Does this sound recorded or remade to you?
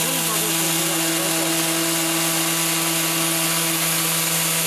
recorded